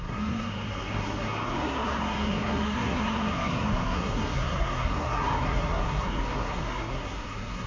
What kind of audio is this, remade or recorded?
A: remade